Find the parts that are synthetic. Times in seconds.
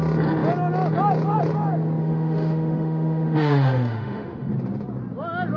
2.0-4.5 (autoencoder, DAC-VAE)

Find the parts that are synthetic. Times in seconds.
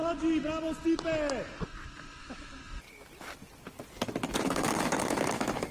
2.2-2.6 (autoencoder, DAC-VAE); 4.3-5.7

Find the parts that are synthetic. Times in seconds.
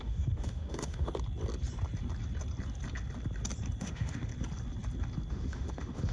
0.0-1.1 (autoencoder, DAC-VAE); 3.8-4.3; 5.3-6.1